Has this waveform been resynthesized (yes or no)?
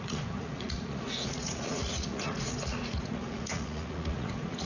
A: yes